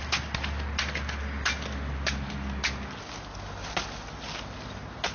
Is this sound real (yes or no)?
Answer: yes